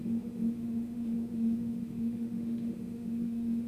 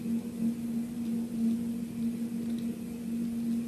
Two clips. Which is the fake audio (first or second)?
first